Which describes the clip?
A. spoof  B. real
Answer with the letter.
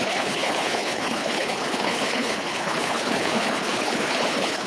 A